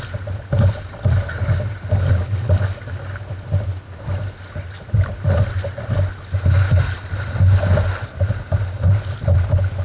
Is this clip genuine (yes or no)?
yes